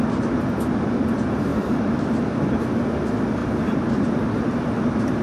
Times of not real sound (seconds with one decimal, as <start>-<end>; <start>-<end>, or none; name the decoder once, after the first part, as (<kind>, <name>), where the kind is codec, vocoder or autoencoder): 1.5-2.6 (vocoder, BigVGAN v2); 3.4-5.2